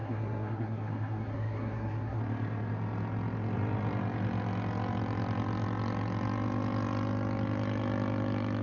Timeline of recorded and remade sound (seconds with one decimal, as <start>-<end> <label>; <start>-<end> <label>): 0.0-2.2 remade; 2.2-8.6 recorded